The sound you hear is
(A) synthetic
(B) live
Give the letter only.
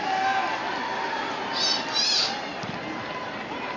A